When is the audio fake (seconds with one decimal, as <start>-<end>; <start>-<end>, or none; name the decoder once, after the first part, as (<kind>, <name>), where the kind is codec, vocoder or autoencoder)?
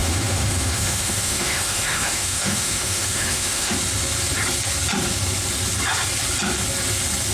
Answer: 0.0-3.7 (autoencoder, DAC-VAE)